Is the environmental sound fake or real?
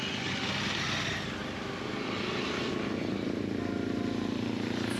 real